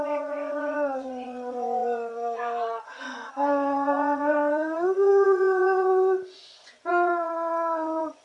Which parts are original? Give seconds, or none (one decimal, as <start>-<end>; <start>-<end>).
none